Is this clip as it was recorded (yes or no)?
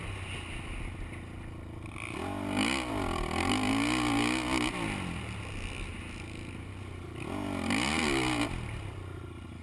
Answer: yes